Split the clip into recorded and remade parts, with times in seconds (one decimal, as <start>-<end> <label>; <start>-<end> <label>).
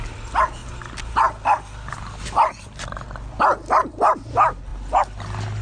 0.0-5.6 recorded